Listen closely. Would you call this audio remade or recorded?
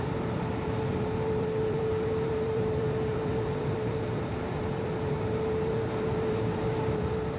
remade